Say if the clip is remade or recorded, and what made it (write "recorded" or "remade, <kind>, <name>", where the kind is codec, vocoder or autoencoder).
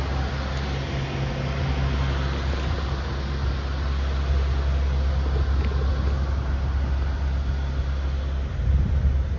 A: recorded